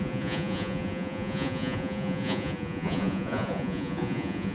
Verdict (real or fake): fake